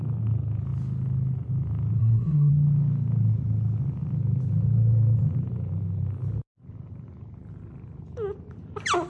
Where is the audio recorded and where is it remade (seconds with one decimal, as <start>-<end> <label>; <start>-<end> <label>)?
0.0-2.0 recorded; 2.0-2.5 remade; 2.5-9.1 recorded

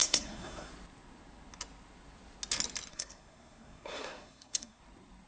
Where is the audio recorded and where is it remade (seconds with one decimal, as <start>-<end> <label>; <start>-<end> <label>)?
0.0-0.7 remade; 0.7-2.9 recorded; 2.9-4.8 remade; 4.8-5.3 recorded

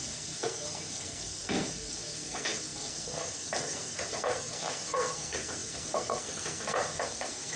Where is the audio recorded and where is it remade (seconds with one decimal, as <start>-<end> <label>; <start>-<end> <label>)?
0.0-7.6 remade

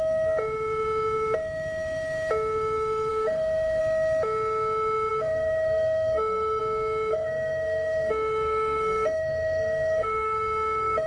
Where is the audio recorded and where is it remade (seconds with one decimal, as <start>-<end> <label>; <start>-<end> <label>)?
0.0-3.1 recorded; 3.1-3.8 remade; 3.8-5.1 recorded; 5.1-6.6 remade; 6.6-7.1 recorded; 7.1-11.1 remade

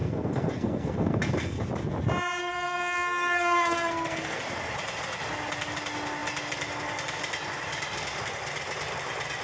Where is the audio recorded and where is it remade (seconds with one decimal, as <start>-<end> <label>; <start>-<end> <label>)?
0.0-1.6 remade; 1.6-2.4 recorded; 2.4-4.4 remade; 4.4-9.4 recorded

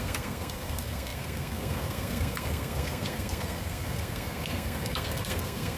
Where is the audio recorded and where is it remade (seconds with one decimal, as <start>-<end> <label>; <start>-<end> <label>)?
0.0-5.8 remade

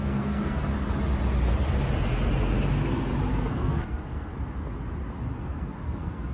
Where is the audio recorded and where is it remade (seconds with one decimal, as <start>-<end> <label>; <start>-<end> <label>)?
0.0-0.7 remade; 0.7-3.3 recorded; 3.3-4.3 remade; 4.3-5.4 recorded; 5.4-6.3 remade

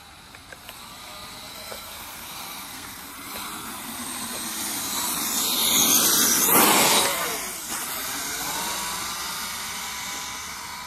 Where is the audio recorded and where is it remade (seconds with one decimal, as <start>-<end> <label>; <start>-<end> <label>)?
0.0-1.5 recorded; 1.5-3.1 remade; 3.1-10.9 recorded